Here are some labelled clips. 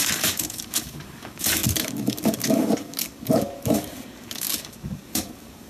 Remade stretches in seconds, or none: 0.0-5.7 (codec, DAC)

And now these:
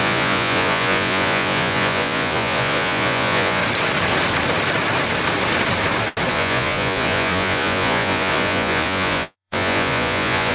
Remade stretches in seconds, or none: 0.0-3.6 (vocoder, Vocos); 6.3-10.5

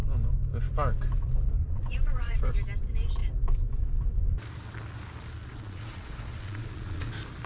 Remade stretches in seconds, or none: 1.6-2.5 (vocoder, Vocos); 5.4-7.1